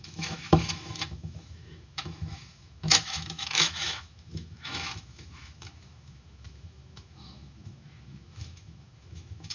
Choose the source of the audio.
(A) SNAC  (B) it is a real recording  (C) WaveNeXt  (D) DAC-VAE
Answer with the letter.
D